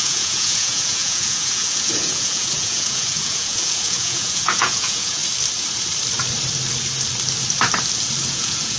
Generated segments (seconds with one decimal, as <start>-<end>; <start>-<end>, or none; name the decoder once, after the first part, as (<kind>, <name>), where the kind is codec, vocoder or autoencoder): 0.0-5.2 (vocoder, Vocos); 8.3-8.8